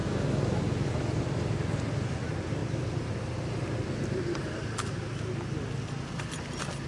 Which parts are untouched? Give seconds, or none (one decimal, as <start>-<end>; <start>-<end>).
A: 0.6-6.9